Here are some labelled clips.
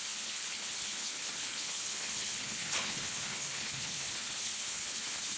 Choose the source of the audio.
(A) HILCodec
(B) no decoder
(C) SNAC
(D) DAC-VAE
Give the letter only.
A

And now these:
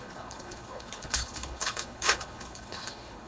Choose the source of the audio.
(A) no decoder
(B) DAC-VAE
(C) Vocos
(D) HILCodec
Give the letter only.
D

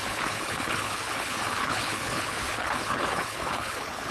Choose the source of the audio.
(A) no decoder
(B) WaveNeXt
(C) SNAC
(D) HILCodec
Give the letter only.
D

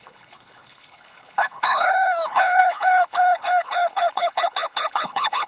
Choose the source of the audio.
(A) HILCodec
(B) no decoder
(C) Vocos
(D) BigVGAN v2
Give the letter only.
A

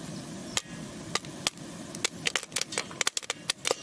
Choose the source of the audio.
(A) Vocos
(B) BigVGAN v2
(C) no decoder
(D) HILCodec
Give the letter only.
C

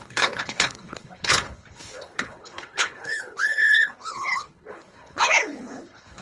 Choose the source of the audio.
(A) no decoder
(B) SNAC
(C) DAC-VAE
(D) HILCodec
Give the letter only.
D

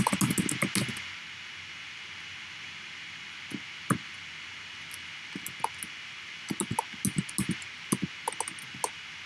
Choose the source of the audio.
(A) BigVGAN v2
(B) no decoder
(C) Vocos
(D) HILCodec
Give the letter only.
B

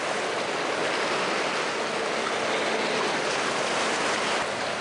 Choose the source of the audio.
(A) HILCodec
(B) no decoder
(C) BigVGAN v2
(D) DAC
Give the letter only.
B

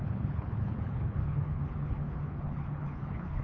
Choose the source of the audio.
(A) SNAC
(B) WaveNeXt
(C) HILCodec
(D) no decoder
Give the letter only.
C